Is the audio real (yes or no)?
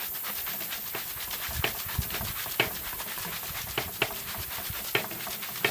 yes